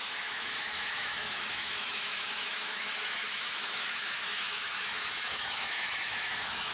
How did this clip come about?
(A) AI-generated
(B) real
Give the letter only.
A